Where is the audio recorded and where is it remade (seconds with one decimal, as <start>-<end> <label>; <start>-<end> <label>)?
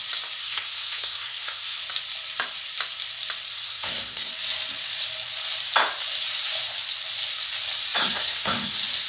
0.0-0.4 recorded; 0.4-1.8 remade; 1.8-3.5 recorded; 3.5-4.3 remade; 4.3-8.0 recorded; 8.0-8.7 remade; 8.7-9.1 recorded